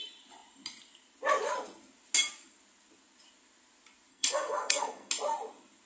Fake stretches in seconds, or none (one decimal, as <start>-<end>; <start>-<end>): 4.1-5.1